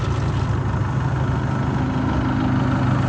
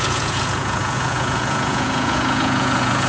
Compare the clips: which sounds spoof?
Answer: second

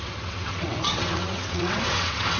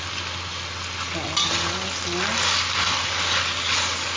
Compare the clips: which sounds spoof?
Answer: first